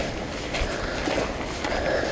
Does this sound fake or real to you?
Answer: real